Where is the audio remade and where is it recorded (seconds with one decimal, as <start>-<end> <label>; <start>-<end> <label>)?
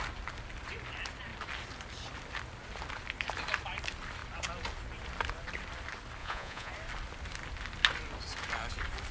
0.0-6.2 recorded; 6.2-6.7 remade; 6.7-9.1 recorded